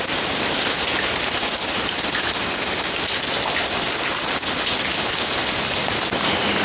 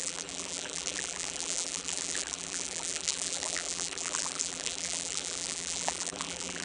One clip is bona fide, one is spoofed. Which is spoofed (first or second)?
second